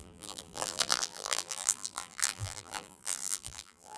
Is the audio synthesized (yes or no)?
yes